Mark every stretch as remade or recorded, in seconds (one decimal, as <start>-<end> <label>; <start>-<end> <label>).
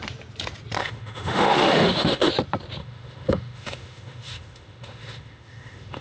0.0-0.8 recorded; 0.8-2.3 remade; 2.3-2.8 recorded; 2.8-6.0 remade